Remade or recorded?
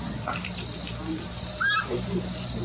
recorded